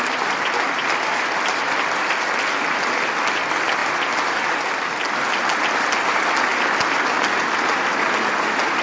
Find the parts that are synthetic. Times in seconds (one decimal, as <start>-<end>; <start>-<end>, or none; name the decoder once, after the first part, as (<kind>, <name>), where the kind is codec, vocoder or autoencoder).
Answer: none